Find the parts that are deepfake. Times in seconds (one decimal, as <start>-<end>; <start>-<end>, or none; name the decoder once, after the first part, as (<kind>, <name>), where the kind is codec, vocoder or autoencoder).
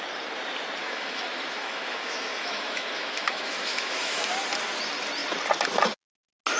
0.8-4.3 (autoencoder, DAC-VAE)